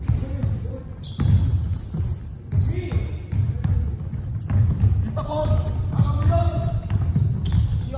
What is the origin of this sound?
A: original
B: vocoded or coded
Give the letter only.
A